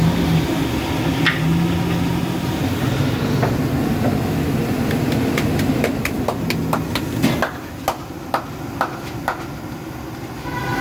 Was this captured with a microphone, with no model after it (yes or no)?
yes